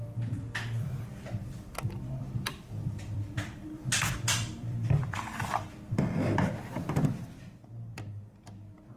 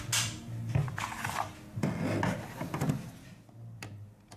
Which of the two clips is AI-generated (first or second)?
first